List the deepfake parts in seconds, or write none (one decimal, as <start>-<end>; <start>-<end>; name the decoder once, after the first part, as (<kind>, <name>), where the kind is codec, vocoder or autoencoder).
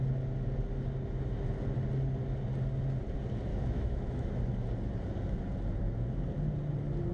3.5-4.3 (autoencoder, DAC-VAE)